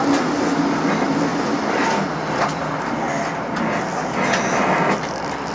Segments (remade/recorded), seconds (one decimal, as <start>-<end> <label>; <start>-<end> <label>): 0.0-5.5 recorded